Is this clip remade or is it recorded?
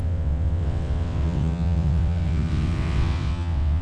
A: remade